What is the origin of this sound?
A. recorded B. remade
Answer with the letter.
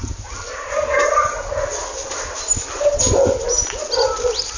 A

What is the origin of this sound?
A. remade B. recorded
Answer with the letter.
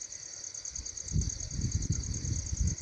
B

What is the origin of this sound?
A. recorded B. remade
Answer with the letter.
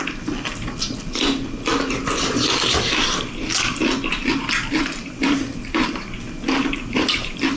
B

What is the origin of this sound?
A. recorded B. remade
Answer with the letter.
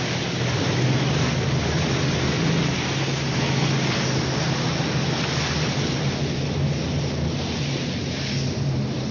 A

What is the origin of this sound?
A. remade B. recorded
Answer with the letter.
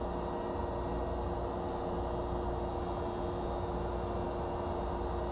B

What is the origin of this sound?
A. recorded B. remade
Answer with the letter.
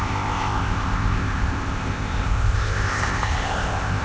B